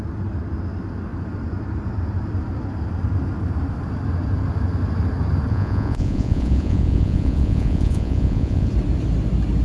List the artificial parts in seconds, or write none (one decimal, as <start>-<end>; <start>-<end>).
5.5-8.7